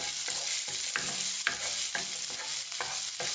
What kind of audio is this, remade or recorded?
recorded